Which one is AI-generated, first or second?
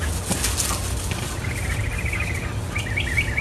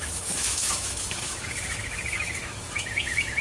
second